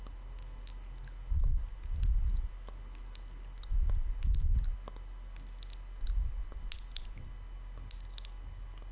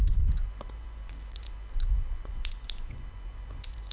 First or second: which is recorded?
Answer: first